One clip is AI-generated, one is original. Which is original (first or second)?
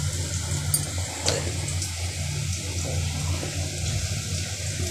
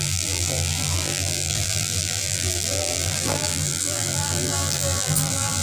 first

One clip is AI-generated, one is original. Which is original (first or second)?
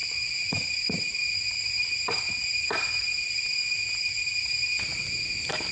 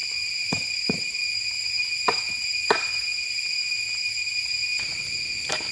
second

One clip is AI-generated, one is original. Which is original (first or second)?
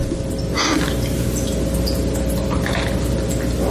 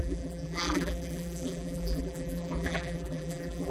first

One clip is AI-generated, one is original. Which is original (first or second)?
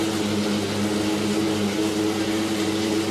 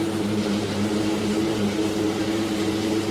first